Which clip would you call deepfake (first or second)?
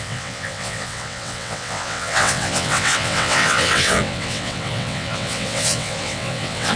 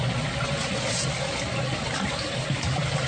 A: first